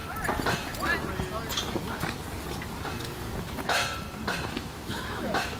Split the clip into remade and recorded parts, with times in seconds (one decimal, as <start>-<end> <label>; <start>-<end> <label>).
0.0-3.4 recorded; 3.4-3.8 remade; 3.8-4.5 recorded; 4.5-5.6 remade